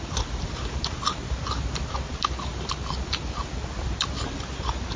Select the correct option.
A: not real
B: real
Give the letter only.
B